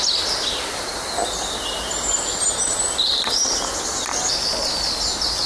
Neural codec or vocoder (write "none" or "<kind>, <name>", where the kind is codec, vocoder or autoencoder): none